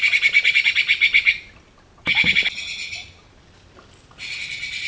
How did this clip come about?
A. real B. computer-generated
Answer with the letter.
A